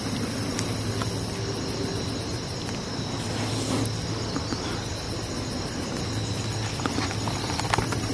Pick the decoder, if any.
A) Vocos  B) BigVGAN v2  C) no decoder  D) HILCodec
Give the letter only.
C